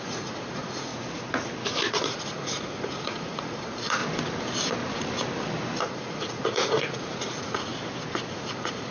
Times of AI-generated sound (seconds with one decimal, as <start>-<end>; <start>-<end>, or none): 0.0-0.9; 1.9-4.0; 5.8-7.7; 8.3-8.9